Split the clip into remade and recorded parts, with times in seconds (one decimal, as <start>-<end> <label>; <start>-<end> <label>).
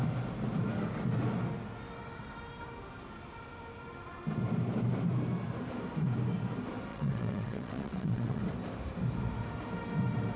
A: 0.0-6.9 recorded; 6.9-8.4 remade; 8.4-10.4 recorded